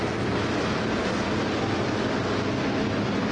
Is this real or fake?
real